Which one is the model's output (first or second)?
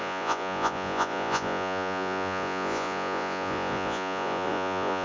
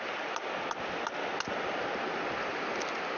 first